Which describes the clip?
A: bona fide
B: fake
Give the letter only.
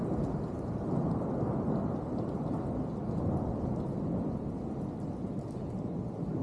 A